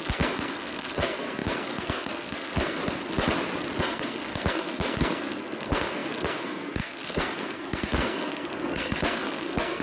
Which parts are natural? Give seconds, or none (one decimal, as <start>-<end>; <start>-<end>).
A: 2.8-3.8